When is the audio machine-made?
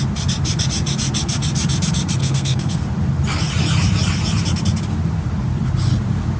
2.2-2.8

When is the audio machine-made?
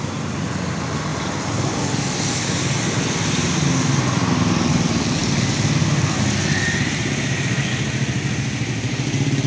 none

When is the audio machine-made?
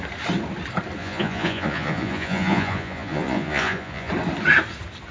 1.0-4.1